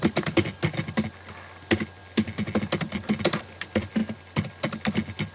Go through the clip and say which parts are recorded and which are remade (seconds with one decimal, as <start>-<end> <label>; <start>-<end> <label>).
0.0-5.3 recorded